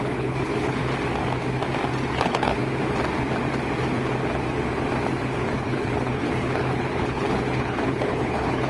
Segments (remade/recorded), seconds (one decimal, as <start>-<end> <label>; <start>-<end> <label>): 0.0-0.8 remade; 0.8-2.1 recorded; 2.1-2.6 remade; 2.6-5.3 recorded; 5.3-8.7 remade